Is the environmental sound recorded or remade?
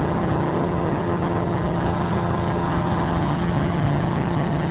remade